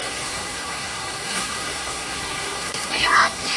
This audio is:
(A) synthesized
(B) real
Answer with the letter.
A